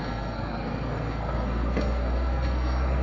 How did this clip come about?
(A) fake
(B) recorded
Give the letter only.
A